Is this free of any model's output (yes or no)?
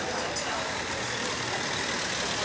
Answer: yes